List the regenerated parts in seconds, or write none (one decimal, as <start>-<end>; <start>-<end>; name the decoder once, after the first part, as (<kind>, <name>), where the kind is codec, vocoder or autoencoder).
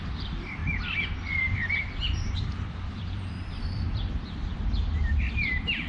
0.0-0.6 (vocoder, BigVGAN v2); 2.9-4.5; 5.1-5.9